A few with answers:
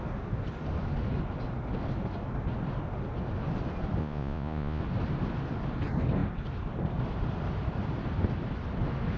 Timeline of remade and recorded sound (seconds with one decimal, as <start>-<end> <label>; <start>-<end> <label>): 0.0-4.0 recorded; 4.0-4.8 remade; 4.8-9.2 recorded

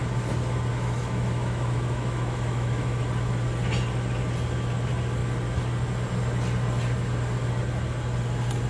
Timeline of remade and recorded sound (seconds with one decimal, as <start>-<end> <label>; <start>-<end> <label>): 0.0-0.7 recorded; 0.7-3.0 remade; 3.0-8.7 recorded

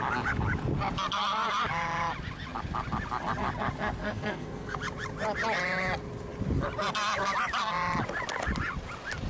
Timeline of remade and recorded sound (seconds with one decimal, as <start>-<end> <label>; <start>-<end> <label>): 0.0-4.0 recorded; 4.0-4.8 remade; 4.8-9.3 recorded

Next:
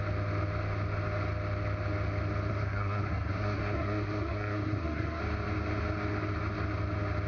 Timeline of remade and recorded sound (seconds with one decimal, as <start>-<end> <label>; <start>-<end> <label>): 0.0-2.5 recorded; 2.5-5.2 remade; 5.2-7.3 recorded

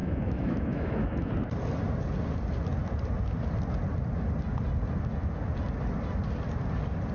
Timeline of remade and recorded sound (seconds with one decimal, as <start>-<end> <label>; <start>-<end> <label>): 0.0-1.3 remade; 1.3-7.1 recorded